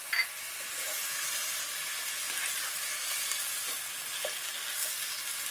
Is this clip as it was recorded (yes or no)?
yes